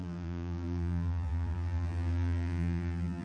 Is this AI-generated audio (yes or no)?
yes